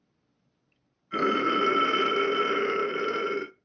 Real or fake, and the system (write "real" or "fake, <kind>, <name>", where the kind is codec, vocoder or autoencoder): real